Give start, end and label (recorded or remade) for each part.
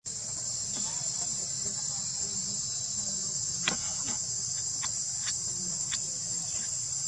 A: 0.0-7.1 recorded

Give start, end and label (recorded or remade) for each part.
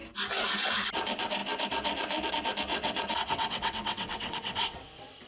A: 0.0-2.7 recorded; 2.7-5.3 remade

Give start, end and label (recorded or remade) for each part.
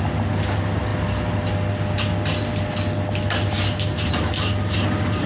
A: 0.0-5.3 recorded